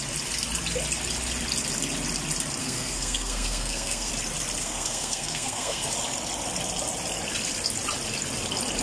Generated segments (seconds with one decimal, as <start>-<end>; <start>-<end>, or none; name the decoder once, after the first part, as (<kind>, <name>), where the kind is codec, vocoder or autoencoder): 2.6-4.1 (codec, SNAC); 4.6-5.9